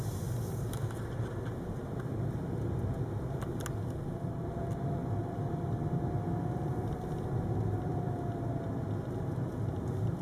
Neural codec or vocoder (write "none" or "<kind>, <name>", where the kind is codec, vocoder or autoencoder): none